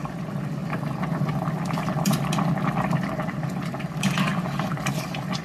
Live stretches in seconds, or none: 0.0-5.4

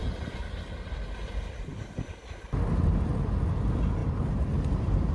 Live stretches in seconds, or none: 0.0-4.0

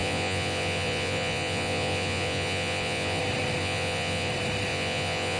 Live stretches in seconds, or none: 3.2-3.6; 4.3-4.7

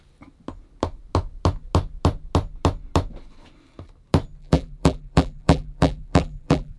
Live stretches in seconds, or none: 0.0-4.4

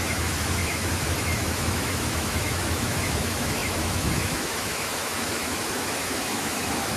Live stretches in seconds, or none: none

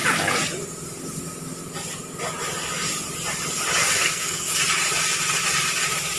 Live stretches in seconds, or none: 0.0-4.0; 4.5-6.2